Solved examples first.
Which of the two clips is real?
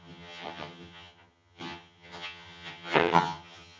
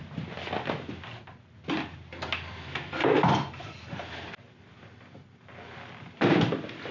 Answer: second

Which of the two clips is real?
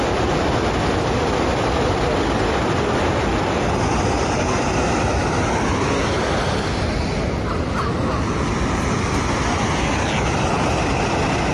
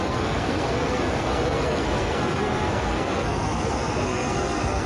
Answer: first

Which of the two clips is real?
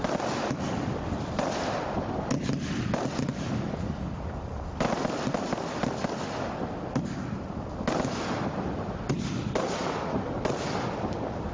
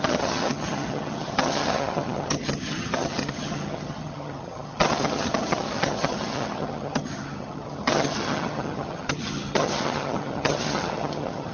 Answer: first